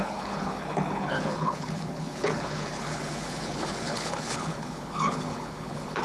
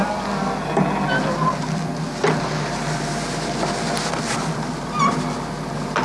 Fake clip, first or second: first